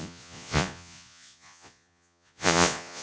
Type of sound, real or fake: fake